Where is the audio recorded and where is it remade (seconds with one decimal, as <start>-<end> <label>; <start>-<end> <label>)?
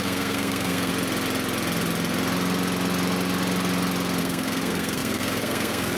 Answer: 0.0-0.9 remade; 0.9-4.2 recorded; 4.2-6.0 remade